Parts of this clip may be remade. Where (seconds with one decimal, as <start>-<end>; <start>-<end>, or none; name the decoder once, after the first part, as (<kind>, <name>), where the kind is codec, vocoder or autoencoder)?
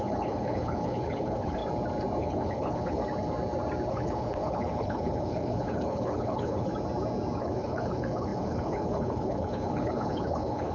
0.0-1.6 (codec, HILCodec); 2.2-3.0; 3.9-6.7; 7.4-10.7